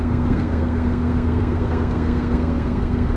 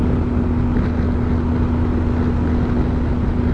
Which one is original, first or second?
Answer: second